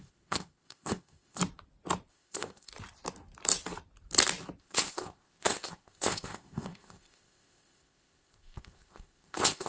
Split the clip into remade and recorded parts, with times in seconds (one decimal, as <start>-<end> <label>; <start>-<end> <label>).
0.0-1.4 remade; 1.4-2.1 recorded; 2.1-2.7 remade; 2.7-4.6 recorded; 4.6-9.7 remade